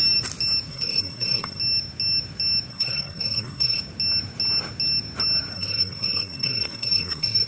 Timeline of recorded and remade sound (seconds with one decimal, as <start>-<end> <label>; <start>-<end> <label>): 0.0-0.7 recorded; 0.7-1.6 remade; 1.6-2.7 recorded; 2.7-3.8 remade; 3.8-5.5 recorded; 5.5-7.5 remade